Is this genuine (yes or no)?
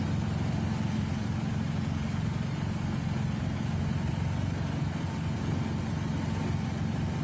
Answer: yes